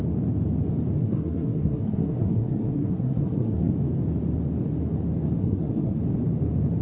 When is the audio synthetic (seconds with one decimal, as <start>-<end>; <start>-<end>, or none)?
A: 1.0-3.7; 5.4-6.0